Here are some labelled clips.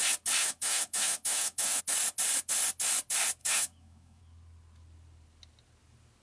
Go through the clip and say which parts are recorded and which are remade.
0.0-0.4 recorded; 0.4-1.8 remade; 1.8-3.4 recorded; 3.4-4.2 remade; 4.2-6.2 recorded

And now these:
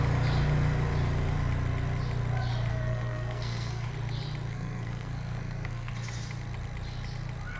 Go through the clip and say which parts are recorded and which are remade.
0.0-2.7 recorded; 2.7-3.9 remade; 3.9-4.5 recorded; 4.5-5.9 remade; 5.9-7.6 recorded

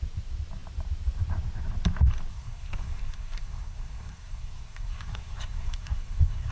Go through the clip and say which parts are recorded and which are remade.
0.0-2.3 recorded; 2.3-6.5 remade

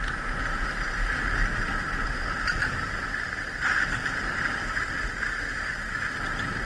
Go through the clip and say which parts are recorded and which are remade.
0.0-2.0 recorded; 2.0-5.0 remade; 5.0-6.7 recorded